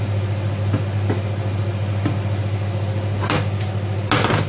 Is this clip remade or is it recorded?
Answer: recorded